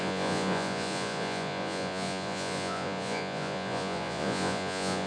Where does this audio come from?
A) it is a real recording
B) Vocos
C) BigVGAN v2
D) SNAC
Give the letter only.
B